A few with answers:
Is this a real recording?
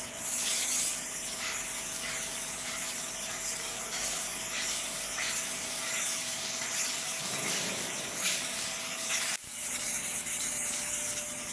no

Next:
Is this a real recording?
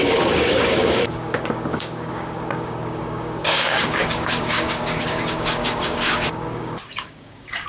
no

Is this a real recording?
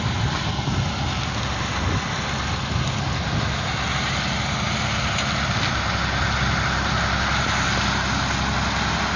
yes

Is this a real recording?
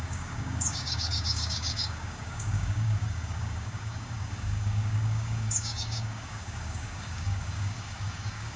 no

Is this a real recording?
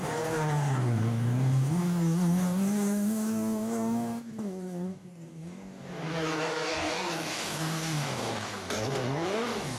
no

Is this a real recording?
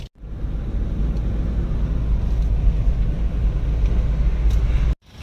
yes